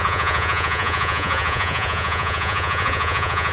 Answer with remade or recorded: remade